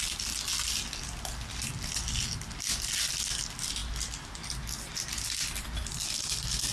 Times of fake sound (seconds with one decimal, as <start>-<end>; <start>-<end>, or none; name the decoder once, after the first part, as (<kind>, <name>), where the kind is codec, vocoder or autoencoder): none